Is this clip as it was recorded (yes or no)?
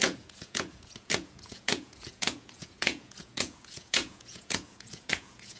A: no